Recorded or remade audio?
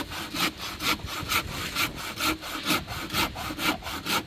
recorded